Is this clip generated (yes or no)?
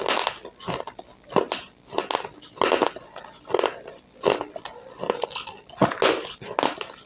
no